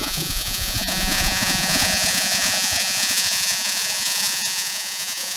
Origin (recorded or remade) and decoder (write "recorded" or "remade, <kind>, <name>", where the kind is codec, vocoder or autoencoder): remade, vocoder, Vocos